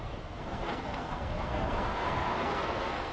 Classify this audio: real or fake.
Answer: fake